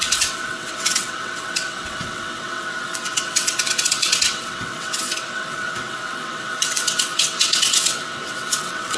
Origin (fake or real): fake